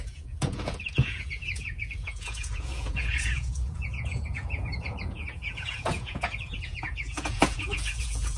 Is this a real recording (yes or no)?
no